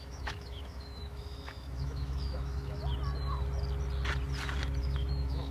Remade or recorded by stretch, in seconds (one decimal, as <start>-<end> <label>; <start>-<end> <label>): 0.0-2.8 remade; 2.8-4.8 recorded; 4.8-5.5 remade